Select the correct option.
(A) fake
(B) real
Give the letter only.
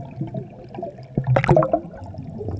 B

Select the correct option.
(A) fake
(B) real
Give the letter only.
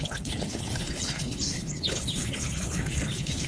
A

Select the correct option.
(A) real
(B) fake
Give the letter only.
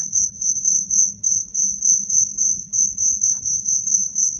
B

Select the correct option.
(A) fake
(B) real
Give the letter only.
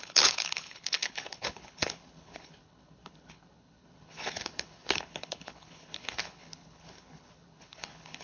A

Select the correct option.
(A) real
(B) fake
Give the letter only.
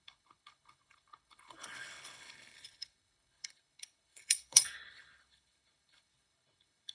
B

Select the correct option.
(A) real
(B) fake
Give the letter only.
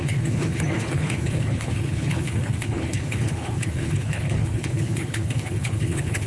B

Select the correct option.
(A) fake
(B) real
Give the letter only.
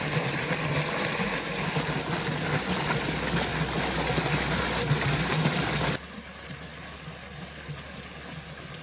B